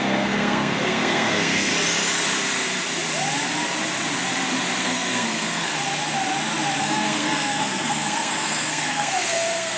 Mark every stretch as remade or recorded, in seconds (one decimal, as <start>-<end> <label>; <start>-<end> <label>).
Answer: 0.0-1.7 remade; 1.7-4.8 recorded; 4.8-5.7 remade; 5.7-6.8 recorded; 6.8-9.8 remade